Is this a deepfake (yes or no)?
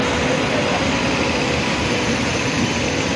no